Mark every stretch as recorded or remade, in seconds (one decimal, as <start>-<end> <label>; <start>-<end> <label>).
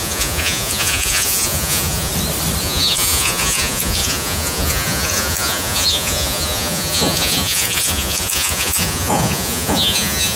0.0-2.1 remade; 2.1-2.6 recorded; 2.6-10.4 remade